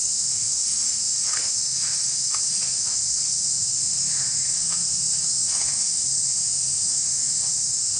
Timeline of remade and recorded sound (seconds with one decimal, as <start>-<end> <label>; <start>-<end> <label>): 0.0-8.0 remade